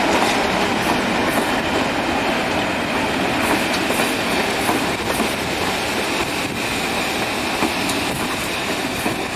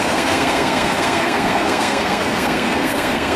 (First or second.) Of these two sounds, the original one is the first